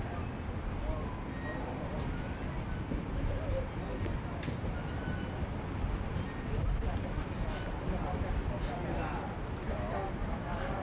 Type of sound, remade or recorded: recorded